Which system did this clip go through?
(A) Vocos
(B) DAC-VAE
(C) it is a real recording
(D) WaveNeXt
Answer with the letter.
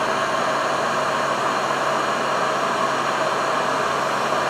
C